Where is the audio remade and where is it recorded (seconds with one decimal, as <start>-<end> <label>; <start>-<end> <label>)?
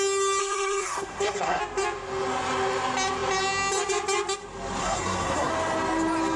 0.0-0.4 recorded; 0.4-1.6 remade; 1.6-4.8 recorded; 4.8-5.5 remade; 5.5-6.4 recorded